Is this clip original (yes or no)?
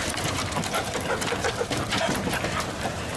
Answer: no